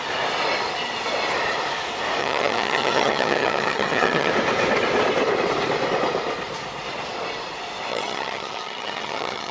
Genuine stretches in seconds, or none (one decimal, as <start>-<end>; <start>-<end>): 0.0-2.2; 4.3-7.9